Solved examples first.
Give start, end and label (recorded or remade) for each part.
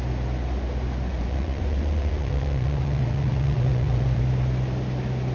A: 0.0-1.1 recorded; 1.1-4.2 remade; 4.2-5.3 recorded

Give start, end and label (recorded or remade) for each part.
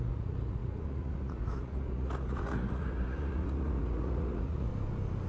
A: 0.0-4.7 remade; 4.7-5.3 recorded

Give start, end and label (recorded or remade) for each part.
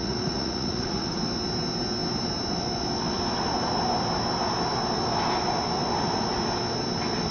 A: 0.0-1.2 remade; 1.2-7.3 recorded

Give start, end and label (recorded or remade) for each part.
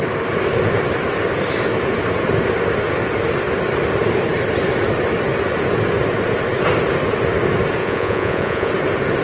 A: 0.0-7.8 recorded; 7.8-8.7 remade; 8.7-9.2 recorded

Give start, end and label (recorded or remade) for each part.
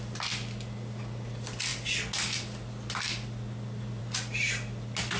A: 0.0-5.2 recorded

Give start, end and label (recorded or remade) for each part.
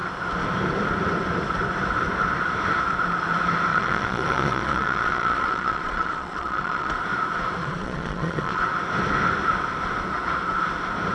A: 0.0-3.7 recorded; 3.7-6.9 remade; 6.9-7.6 recorded; 7.6-8.6 remade; 8.6-11.1 recorded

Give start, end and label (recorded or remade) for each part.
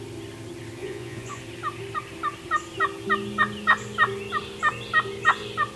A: 0.0-0.8 recorded; 0.8-1.4 remade; 1.4-5.8 recorded